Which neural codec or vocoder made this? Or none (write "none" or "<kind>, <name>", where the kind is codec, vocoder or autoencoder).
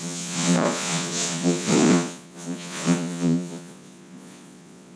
vocoder, Vocos